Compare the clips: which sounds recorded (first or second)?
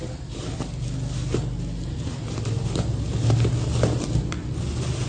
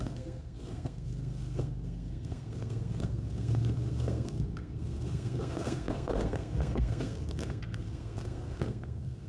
first